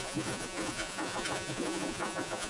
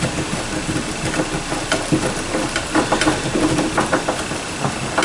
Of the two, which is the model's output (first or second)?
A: first